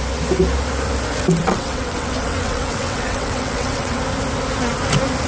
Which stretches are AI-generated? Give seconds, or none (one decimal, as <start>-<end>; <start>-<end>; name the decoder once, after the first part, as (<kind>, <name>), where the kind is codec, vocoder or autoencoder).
1.4-4.0 (vocoder, WaveNeXt)